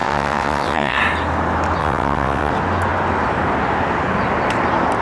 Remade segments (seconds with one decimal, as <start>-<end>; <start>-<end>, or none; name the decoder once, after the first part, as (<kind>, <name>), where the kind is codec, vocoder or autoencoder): 0.0-1.0 (vocoder, WaveNeXt); 1.8-2.5